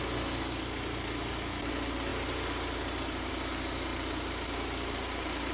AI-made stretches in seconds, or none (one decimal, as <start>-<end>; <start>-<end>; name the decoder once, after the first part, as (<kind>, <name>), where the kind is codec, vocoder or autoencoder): 2.1-3.3 (vocoder, BigVGAN v2); 3.9-5.5

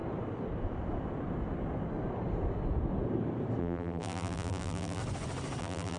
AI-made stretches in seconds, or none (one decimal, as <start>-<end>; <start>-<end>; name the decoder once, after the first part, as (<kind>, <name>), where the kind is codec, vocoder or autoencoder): 3.6-5.0 (vocoder, BigVGAN v2); 5.6-6.0

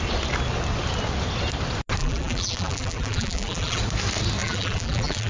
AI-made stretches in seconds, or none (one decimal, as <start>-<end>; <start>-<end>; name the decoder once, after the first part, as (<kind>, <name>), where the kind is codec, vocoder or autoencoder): 2.0-3.8 (vocoder, BigVGAN v2); 4.4-5.3

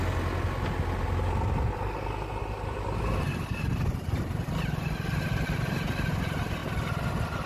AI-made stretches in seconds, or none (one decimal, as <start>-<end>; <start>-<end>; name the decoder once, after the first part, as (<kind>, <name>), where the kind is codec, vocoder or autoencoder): none

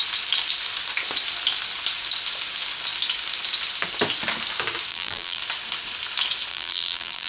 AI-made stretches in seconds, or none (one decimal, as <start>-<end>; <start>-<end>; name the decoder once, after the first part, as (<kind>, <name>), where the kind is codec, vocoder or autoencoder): 4.9-5.4 (vocoder, BigVGAN v2); 6.5-7.3

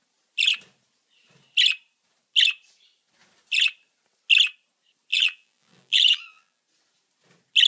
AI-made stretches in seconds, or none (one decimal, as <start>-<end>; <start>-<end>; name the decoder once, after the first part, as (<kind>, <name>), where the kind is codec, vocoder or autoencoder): 5.1-6.6 (vocoder, BigVGAN v2)